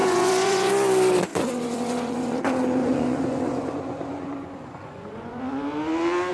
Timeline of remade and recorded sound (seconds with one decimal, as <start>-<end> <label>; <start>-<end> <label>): 0.0-0.7 remade; 0.7-1.3 recorded; 1.3-2.4 remade; 2.4-2.8 recorded; 2.8-5.4 remade; 5.4-6.3 recorded